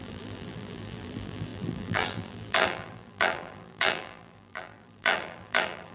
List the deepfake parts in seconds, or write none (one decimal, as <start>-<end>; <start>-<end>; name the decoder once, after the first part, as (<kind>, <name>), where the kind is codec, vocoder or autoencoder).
0.0-5.9 (vocoder, BigVGAN v2)